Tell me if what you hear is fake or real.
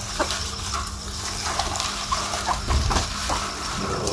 real